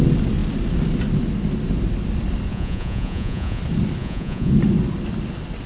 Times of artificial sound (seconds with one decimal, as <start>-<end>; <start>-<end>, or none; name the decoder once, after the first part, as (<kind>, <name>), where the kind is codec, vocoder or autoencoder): 2.5-3.6 (vocoder, Vocos); 4.0-4.5